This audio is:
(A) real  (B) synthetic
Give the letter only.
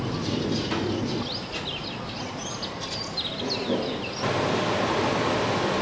A